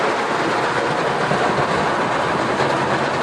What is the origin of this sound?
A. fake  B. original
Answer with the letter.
B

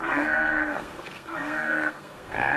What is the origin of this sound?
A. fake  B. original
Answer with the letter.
A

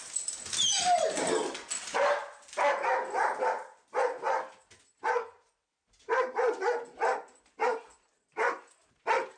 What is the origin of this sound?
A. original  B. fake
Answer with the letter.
A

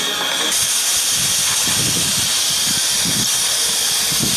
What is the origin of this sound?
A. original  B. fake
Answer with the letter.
A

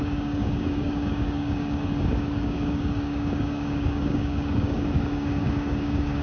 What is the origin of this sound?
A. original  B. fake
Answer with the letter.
B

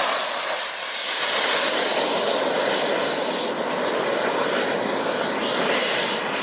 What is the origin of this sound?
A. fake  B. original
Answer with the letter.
B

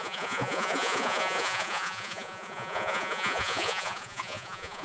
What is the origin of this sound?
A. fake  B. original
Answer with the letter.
A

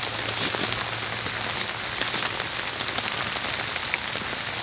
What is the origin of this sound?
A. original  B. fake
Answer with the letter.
A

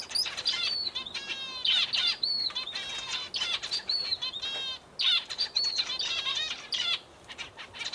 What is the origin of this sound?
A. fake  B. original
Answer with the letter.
B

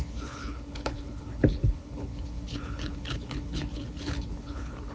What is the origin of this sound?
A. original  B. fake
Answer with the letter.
B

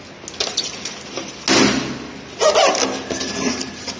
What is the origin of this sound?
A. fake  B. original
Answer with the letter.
B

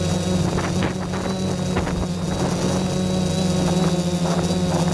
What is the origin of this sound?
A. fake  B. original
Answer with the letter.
B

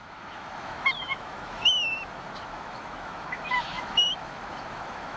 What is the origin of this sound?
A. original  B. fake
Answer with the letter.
B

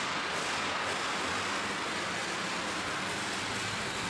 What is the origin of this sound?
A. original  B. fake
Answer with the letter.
A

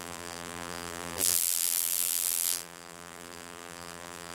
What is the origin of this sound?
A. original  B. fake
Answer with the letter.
B